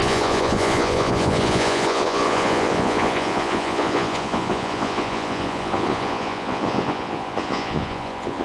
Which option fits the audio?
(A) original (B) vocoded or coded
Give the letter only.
B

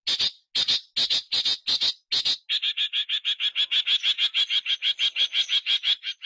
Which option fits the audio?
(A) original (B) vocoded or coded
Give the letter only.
A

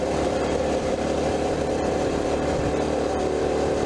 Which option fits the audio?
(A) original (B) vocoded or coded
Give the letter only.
B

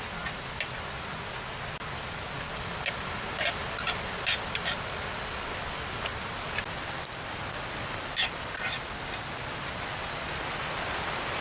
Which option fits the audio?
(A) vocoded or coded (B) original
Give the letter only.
B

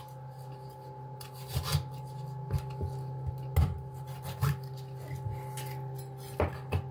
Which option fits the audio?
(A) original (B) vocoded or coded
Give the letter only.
A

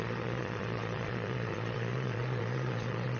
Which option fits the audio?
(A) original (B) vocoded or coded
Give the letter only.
B